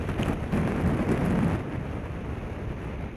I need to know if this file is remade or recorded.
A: recorded